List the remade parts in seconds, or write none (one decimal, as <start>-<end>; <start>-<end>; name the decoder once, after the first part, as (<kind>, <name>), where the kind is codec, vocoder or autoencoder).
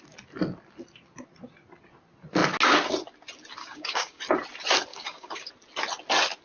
3.6-4.2 (codec, DAC); 4.9-5.5